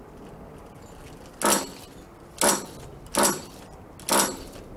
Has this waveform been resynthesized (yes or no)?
no